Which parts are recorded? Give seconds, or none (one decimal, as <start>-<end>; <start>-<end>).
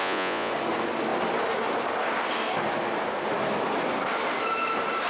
0.5-5.1